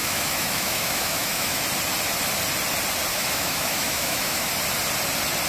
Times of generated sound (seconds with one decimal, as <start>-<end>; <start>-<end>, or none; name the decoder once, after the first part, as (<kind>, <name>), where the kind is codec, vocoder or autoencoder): 0.0-1.6 (autoencoder, DAC-VAE); 3.1-4.5

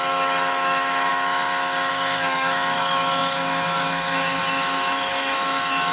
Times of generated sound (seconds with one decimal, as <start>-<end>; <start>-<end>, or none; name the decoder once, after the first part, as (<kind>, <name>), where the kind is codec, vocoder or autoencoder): 0.0-5.9 (autoencoder, DAC-VAE)

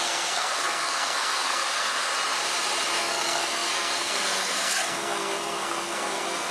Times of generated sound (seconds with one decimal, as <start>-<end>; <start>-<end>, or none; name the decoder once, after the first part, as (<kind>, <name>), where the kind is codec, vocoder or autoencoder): 0.0-2.1 (codec, SNAC); 3.0-6.5

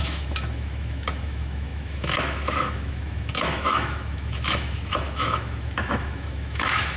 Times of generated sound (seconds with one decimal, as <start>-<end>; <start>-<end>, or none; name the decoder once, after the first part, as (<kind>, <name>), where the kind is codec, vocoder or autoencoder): 0.0-7.0 (autoencoder, DAC-VAE)

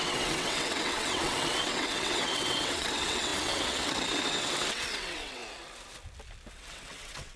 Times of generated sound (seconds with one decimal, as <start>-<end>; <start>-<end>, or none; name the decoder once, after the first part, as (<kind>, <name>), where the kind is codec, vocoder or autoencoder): 0.0-5.4 (vocoder, WaveNeXt); 6.5-7.4